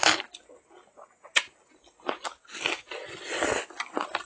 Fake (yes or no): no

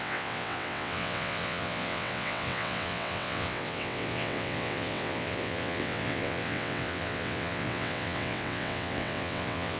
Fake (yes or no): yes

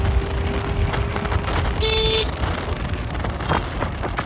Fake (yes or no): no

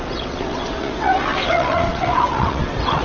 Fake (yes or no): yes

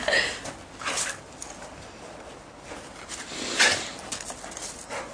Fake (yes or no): no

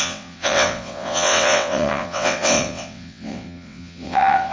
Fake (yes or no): yes